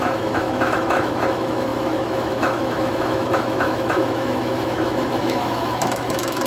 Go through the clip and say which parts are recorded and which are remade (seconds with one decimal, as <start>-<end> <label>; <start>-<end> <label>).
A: 0.0-6.5 remade